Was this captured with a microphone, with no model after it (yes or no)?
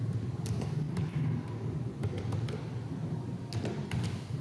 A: yes